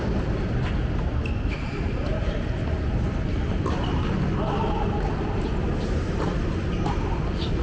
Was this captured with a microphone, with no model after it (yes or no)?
yes